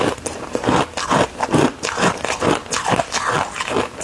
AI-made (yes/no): no